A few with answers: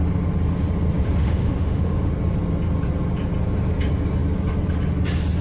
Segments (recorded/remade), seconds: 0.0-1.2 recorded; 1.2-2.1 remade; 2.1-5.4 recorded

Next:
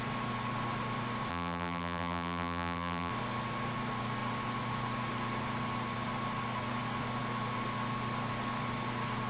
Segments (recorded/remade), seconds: 0.0-1.3 recorded; 1.3-3.1 remade; 3.1-9.3 recorded

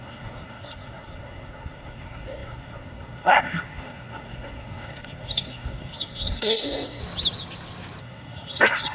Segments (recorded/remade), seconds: 0.0-7.0 remade; 7.0-8.0 recorded; 8.0-8.9 remade